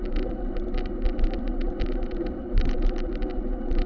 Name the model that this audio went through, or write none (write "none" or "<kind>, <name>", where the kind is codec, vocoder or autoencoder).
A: none